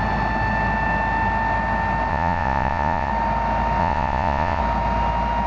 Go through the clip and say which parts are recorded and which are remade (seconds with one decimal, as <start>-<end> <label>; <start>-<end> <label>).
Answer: 0.0-2.1 recorded; 2.1-3.1 remade; 3.1-3.8 recorded; 3.8-4.6 remade; 4.6-5.5 recorded